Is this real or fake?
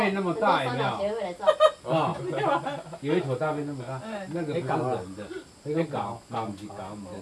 real